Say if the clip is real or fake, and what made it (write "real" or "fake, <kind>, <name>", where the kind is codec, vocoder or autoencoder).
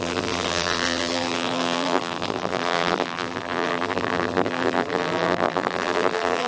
fake, vocoder, BigVGAN v2